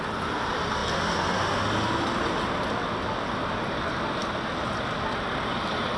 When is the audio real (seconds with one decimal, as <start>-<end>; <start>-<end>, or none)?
0.0-6.0